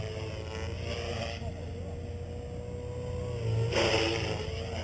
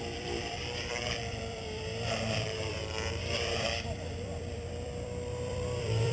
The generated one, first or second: second